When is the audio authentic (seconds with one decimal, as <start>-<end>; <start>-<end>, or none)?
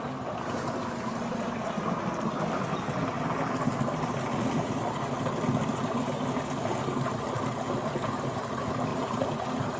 0.0-4.3; 4.8-8.9